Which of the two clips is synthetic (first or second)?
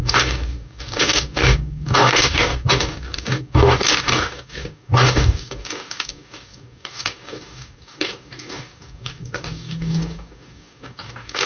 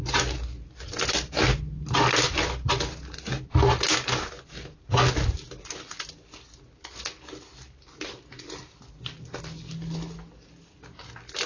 first